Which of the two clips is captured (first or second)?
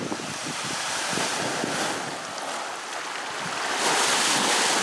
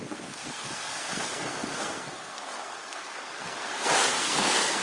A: first